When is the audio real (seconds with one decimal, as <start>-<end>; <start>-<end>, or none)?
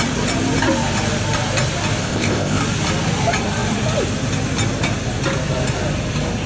0.0-2.0; 2.6-6.5